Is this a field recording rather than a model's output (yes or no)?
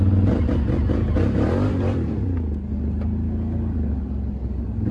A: yes